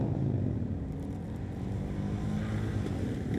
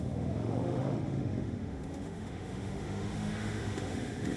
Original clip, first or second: first